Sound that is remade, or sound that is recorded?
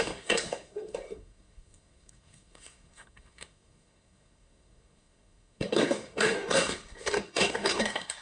remade